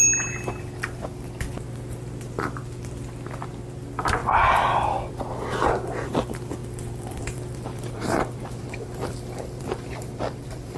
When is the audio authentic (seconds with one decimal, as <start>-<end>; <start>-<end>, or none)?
0.0-4.2; 5.1-6.6